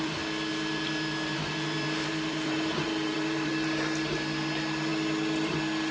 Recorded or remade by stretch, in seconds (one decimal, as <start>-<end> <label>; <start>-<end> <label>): 0.0-0.5 recorded; 0.5-3.5 remade; 3.5-5.9 recorded